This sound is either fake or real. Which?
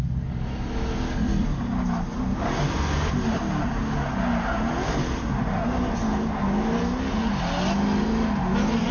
real